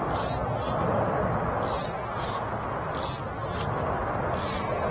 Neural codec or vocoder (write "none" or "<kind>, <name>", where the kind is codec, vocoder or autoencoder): none